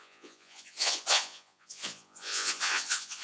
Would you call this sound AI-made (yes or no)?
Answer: yes